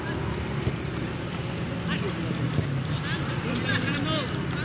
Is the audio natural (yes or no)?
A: yes